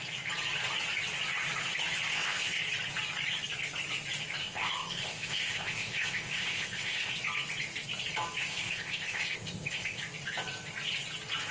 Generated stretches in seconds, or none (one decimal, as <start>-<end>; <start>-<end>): 2.1-2.6; 4.4-7.1; 8.5-10.0